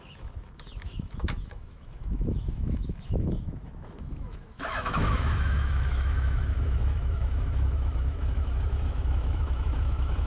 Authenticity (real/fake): fake